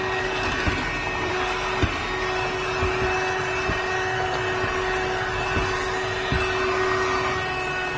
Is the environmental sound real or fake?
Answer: real